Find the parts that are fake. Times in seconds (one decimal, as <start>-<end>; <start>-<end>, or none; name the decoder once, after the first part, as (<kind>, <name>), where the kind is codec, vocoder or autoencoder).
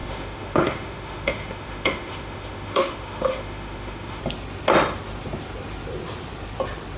0.0-4.2 (autoencoder, DAC-VAE)